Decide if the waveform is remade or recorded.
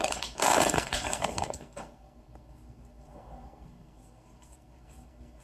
remade